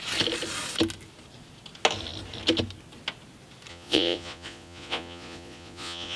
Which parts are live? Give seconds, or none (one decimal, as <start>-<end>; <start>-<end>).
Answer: 0.0-3.7